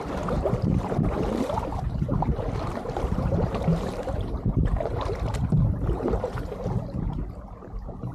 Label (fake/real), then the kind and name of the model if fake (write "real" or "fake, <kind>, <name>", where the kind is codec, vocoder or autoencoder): fake, vocoder, BigVGAN v2